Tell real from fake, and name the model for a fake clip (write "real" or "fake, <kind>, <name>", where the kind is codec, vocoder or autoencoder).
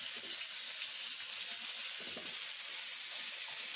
real